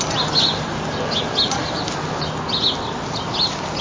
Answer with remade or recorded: recorded